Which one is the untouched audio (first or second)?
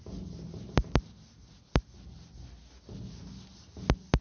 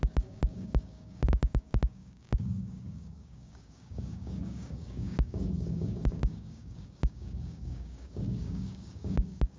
first